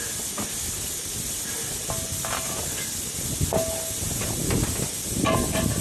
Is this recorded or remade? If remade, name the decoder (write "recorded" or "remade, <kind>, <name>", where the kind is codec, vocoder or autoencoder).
recorded